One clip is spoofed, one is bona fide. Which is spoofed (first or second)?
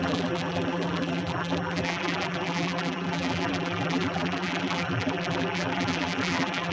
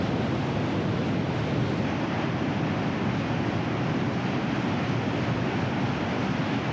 first